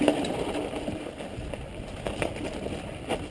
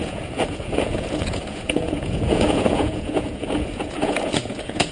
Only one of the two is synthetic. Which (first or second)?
second